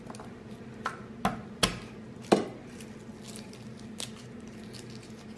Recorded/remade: recorded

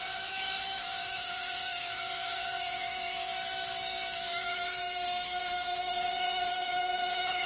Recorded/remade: remade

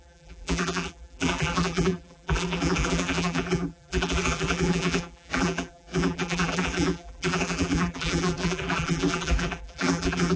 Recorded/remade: remade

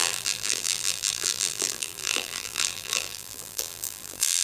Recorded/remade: remade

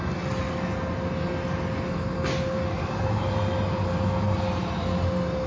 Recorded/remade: recorded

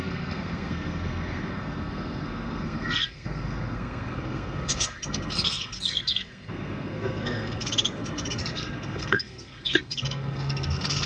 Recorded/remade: remade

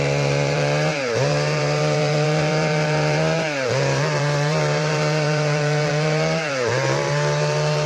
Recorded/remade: remade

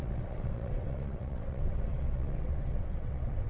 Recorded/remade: remade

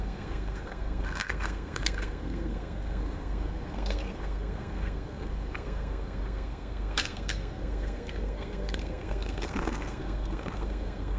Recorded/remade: remade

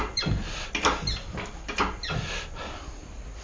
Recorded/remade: recorded